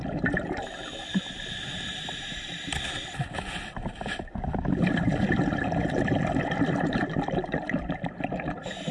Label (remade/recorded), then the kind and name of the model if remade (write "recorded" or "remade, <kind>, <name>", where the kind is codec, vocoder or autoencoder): remade, vocoder, BigVGAN v2